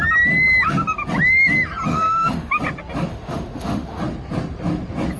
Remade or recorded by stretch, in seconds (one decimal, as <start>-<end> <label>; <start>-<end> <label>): 0.0-1.9 recorded; 1.9-2.6 remade; 2.6-3.1 recorded; 3.1-4.0 remade; 4.0-5.2 recorded